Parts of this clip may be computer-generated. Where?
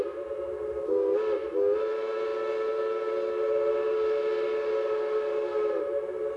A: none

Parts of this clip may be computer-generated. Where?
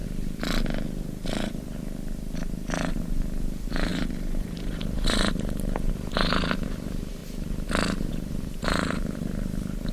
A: 2.9-7.2 (vocoder, BigVGAN v2); 8.1-9.9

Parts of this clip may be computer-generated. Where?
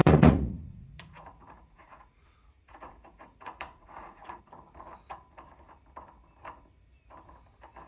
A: 0.0-4.4 (vocoder, Vocos)